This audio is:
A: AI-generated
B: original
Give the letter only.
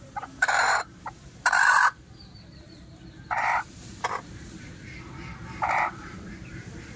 A